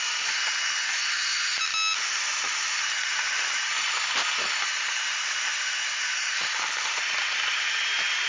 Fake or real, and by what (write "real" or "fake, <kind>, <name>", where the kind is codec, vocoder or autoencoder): real